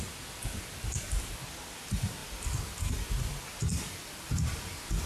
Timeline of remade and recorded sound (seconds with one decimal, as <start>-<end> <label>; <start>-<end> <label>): 0.0-2.2 recorded; 2.2-5.1 remade